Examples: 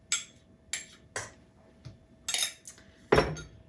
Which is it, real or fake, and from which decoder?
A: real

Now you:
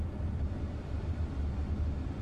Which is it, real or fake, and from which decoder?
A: real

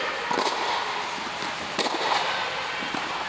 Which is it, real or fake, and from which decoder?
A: real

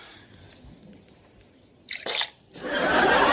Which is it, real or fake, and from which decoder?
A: real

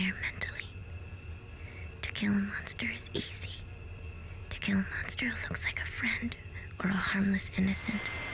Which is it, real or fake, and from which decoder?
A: real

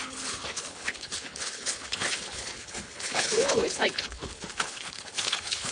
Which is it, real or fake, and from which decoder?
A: fake, codec, HILCodec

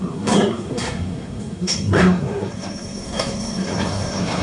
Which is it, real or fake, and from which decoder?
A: fake, codec, SNAC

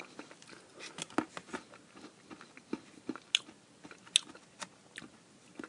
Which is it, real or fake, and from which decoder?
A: real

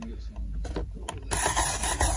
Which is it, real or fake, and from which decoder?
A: real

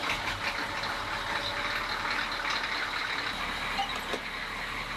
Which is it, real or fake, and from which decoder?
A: real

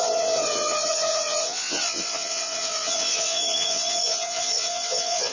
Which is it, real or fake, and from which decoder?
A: fake, vocoder, WaveNeXt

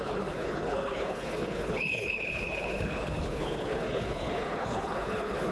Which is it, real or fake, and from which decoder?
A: fake, codec, HILCodec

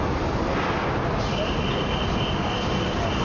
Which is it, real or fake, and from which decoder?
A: real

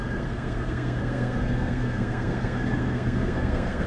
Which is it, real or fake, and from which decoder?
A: fake, codec, SNAC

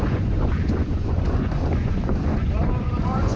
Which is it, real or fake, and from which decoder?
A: fake, vocoder, Vocos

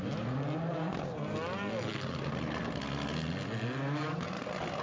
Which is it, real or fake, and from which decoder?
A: real